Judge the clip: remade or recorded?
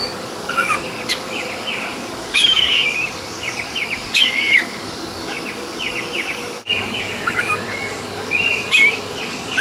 remade